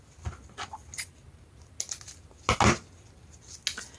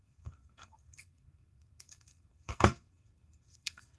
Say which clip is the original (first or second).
first